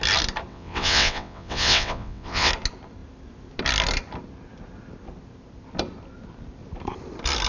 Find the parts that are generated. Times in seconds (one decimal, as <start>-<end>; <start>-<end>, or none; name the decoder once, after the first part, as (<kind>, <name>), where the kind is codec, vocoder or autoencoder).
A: 0.5-2.5 (vocoder, WaveNeXt)